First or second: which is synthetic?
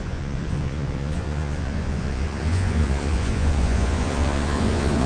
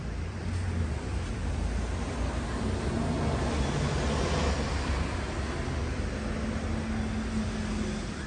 first